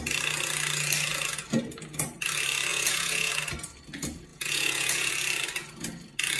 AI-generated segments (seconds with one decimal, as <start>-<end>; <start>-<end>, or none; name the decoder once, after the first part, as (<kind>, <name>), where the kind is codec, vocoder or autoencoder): 2.7-3.3 (vocoder, Vocos); 4.3-5.1